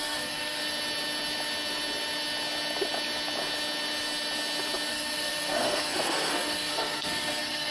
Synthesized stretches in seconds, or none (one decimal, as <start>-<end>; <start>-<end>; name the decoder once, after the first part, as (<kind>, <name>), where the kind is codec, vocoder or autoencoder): 0.0-0.6 (codec, SNAC); 4.9-7.7